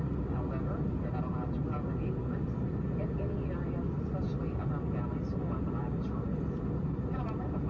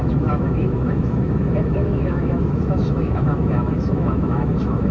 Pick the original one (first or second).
first